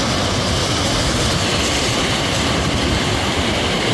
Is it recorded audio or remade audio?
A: recorded